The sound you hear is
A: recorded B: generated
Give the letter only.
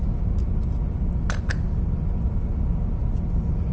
A